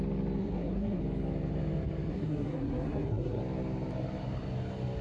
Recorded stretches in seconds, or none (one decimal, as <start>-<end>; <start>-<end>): 0.0-0.4; 1.0-2.1; 3.4-5.0